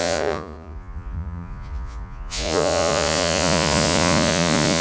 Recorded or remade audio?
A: remade